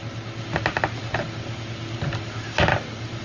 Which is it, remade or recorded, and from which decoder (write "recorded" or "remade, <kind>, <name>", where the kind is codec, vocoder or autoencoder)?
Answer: recorded